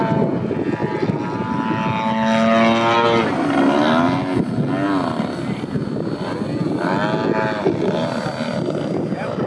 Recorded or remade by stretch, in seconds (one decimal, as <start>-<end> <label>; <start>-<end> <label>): 0.0-9.5 recorded